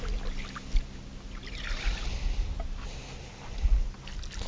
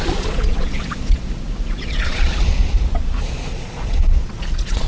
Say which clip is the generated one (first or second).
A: second